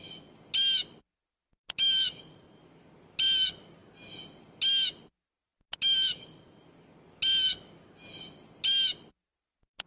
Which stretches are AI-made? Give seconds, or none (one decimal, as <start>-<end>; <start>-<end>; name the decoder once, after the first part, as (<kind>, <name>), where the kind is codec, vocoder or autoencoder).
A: none